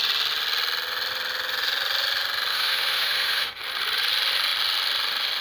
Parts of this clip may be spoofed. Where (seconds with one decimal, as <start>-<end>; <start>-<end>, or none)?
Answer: 2.5-3.6